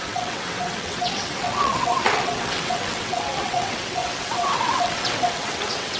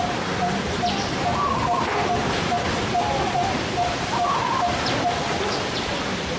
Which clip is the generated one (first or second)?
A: first